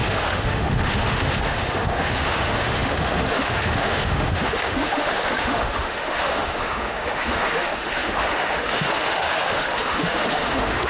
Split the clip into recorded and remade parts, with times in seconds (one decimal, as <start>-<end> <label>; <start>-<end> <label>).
0.0-10.9 remade